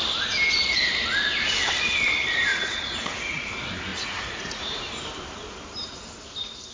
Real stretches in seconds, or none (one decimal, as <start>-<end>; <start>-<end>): 0.0-2.5; 3.5-3.9; 4.9-6.7